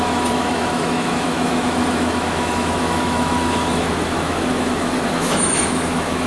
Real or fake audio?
fake